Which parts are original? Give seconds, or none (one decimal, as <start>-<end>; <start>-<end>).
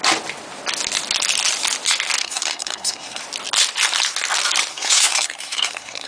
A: 0.0-2.2; 3.2-4.7